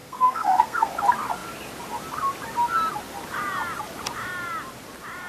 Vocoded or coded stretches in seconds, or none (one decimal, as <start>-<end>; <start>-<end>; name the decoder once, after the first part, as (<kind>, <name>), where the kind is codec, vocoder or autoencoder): 0.0-0.9 (codec, SNAC)